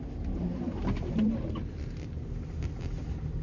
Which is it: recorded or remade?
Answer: recorded